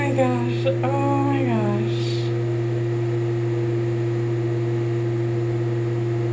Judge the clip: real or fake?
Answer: real